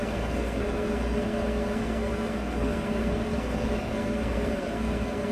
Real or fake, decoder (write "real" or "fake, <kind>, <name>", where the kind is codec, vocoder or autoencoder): fake, codec, SNAC